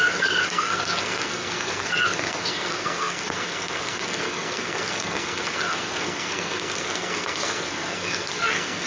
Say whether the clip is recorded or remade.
remade